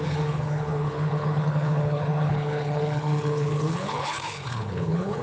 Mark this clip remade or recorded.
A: remade